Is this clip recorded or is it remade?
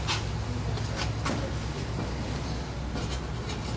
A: recorded